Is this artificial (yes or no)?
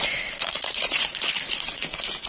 yes